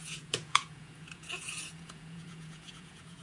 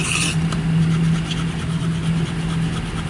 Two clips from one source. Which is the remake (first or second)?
first